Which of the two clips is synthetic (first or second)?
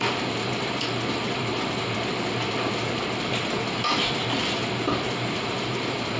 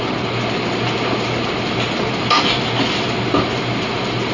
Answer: first